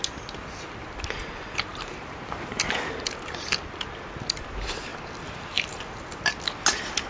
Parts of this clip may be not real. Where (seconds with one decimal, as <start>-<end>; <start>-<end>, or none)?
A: 1.7-2.7